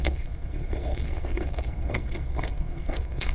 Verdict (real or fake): fake